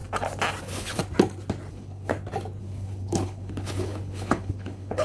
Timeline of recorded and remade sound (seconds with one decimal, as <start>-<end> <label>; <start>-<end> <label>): 0.0-0.6 recorded; 0.6-1.0 remade; 1.0-1.7 recorded; 1.7-2.1 remade; 2.1-2.6 recorded; 2.6-5.0 remade